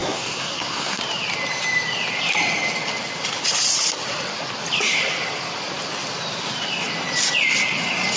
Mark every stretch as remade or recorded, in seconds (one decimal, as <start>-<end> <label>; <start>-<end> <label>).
0.0-1.0 remade; 1.0-8.2 recorded